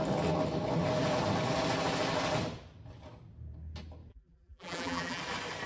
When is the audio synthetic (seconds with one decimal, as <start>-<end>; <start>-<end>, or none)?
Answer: 4.1-5.2